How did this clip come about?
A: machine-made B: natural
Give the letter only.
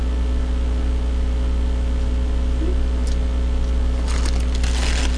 B